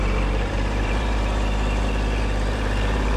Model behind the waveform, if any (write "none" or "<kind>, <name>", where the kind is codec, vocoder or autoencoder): vocoder, BigVGAN v2